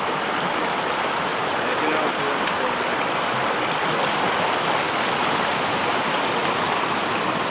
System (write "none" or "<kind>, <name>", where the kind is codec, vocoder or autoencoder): none